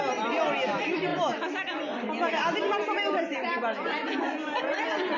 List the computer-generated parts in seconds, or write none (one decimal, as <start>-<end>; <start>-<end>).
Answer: none